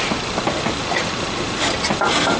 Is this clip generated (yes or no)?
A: no